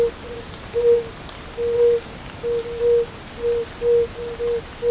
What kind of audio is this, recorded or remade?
recorded